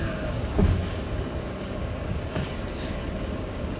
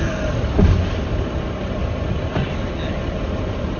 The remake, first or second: first